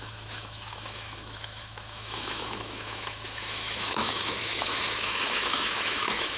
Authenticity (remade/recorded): remade